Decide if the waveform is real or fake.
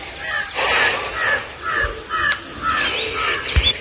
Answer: real